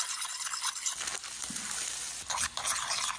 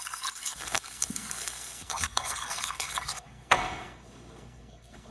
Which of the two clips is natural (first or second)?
first